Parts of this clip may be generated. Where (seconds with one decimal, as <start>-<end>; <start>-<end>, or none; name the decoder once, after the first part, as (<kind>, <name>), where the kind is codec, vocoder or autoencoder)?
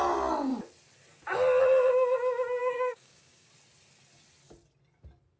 2.6-3.5 (codec, DAC)